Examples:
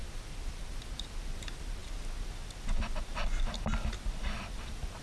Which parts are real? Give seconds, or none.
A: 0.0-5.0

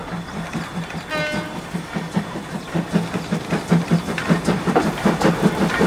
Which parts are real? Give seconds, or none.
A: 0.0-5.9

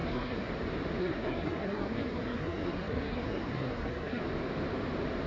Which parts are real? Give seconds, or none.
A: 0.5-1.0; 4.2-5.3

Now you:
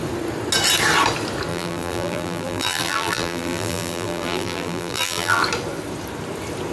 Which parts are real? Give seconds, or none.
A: 0.0-1.5; 5.4-6.7